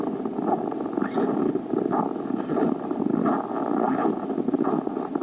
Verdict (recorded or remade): recorded